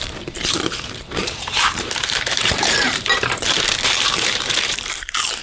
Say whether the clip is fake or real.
fake